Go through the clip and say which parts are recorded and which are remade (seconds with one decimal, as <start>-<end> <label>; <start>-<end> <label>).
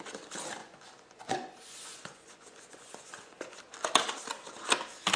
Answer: 0.0-0.6 recorded; 0.6-3.7 remade; 3.7-5.2 recorded